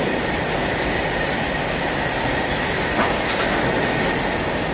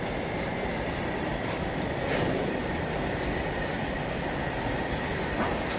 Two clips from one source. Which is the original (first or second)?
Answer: first